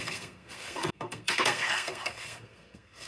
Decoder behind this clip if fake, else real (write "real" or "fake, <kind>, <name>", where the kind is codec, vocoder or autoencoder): fake, codec, SNAC